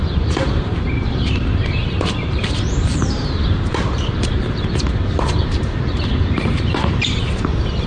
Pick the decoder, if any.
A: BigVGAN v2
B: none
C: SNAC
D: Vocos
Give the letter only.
A